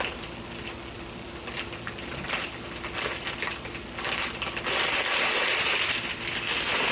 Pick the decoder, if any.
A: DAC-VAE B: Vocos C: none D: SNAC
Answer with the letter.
C